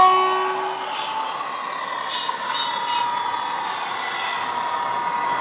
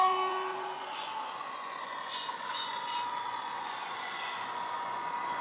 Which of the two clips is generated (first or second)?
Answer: second